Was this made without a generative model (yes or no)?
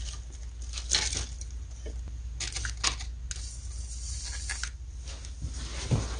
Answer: yes